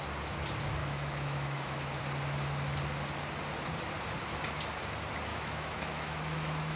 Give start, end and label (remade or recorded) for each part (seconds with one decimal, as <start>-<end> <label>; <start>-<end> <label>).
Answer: 0.0-0.8 recorded; 0.8-2.0 remade; 2.0-5.3 recorded; 5.3-6.8 remade